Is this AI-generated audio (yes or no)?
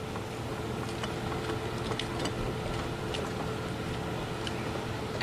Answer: no